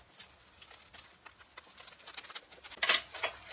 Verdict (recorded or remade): recorded